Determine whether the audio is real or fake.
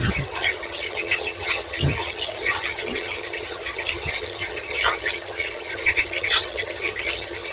fake